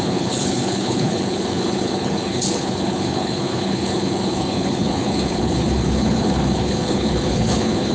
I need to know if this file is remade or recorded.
remade